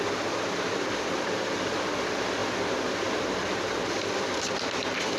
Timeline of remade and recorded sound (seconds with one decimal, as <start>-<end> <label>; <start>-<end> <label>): 0.0-5.2 recorded